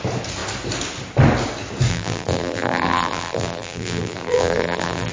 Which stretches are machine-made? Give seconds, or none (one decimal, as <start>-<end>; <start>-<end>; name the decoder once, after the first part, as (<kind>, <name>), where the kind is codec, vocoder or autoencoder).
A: 1.9-5.1 (vocoder, BigVGAN v2)